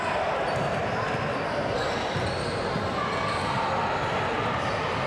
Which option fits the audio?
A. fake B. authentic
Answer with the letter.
B